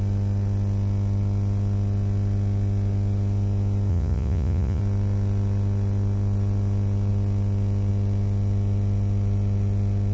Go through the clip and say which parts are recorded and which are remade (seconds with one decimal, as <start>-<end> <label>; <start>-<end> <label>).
0.0-3.9 recorded; 3.9-4.8 remade; 4.8-10.1 recorded